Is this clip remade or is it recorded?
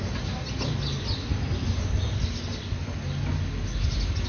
recorded